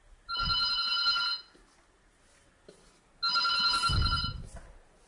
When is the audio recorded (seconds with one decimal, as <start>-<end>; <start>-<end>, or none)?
0.0-5.1

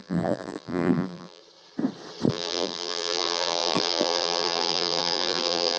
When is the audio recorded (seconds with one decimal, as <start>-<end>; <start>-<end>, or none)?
1.4-2.3

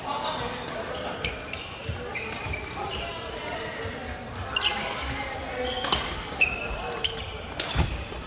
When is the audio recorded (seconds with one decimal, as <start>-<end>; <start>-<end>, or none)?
0.0-8.3

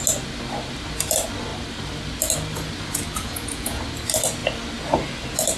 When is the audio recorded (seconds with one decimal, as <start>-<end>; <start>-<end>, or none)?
0.0-3.2; 3.8-5.6

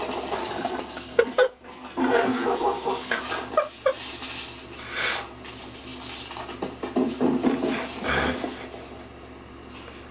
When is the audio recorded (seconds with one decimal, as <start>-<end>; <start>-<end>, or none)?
0.0-0.4; 3.2-10.1

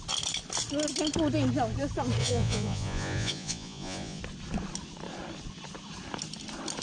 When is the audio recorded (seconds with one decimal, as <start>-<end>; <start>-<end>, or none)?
0.0-2.2; 4.2-6.8